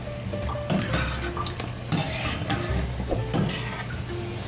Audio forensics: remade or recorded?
recorded